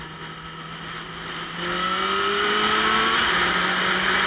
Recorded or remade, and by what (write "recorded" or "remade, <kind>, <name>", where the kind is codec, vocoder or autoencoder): recorded